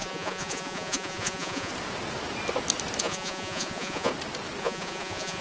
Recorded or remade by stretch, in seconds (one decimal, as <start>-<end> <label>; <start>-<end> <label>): 0.0-1.7 remade; 1.7-3.0 recorded; 3.0-4.1 remade; 4.1-4.6 recorded; 4.6-5.4 remade